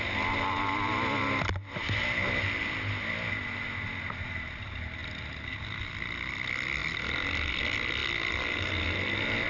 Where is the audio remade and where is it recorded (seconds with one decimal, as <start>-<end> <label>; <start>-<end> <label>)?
0.0-9.5 recorded